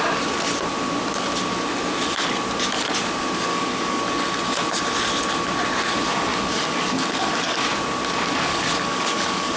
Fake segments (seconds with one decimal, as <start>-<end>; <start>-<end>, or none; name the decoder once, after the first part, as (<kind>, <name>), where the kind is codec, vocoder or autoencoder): 3.5-4.0 (codec, DAC); 6.1-7.6; 8.5-9.6

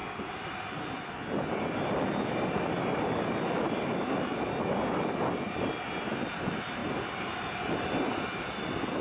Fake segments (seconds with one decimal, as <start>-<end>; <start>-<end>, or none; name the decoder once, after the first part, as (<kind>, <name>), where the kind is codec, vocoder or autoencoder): none

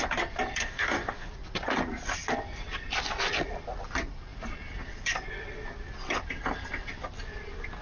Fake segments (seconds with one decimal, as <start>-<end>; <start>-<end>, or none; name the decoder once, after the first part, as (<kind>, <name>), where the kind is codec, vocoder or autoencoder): 0.6-1.3 (codec, DAC)

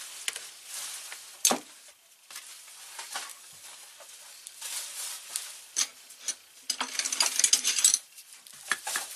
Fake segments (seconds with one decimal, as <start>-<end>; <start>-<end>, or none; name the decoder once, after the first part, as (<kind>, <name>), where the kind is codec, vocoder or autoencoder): 3.3-3.9 (codec, DAC)

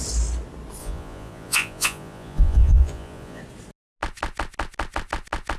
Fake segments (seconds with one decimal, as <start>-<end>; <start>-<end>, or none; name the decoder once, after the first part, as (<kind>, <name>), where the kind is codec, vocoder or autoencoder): 0.8-3.4 (vocoder, Vocos)

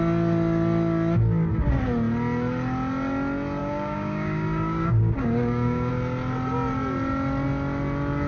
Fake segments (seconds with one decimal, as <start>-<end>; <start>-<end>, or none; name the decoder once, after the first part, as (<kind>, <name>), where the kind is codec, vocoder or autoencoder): 3.6-5.9 (codec, DAC)

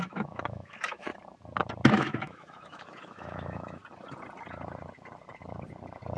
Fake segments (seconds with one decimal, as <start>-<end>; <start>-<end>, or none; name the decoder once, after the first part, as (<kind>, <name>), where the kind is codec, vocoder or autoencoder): 0.0-1.1 (autoencoder, DAC-VAE); 1.9-3.8

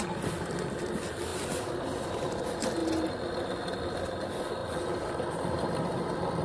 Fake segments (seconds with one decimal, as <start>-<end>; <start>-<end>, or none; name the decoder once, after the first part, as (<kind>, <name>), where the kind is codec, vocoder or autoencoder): 0.0-2.8 (vocoder, BigVGAN v2); 3.3-4.6